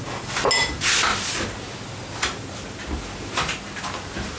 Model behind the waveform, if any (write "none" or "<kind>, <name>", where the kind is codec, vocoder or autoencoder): none